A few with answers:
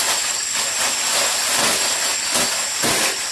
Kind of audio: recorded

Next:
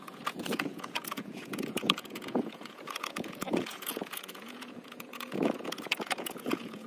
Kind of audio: remade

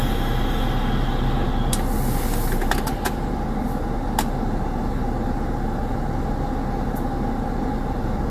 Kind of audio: recorded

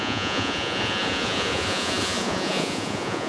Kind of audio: remade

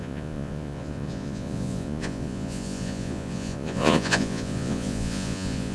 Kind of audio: remade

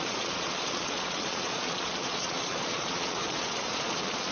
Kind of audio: remade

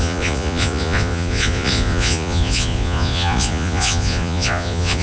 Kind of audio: remade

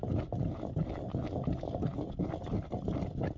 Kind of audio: recorded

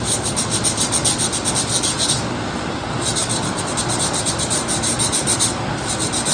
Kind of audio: recorded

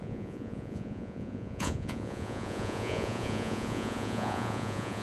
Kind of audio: remade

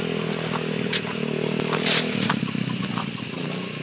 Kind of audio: recorded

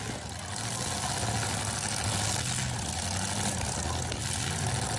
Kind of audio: recorded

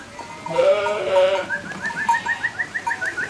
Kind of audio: recorded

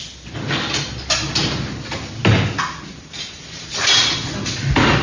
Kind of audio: recorded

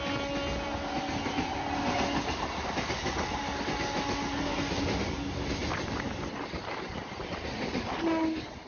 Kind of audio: recorded